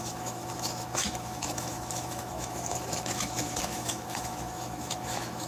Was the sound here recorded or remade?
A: remade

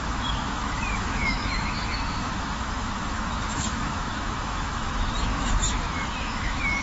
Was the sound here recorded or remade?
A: remade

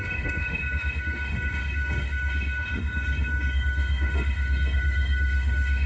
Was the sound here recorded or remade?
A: remade